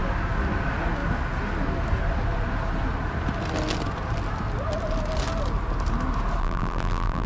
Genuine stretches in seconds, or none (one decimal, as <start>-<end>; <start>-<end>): 0.0-6.4